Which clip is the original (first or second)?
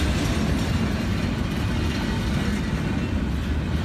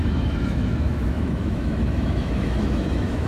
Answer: first